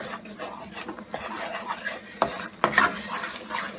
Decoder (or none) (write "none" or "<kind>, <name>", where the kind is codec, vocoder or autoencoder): none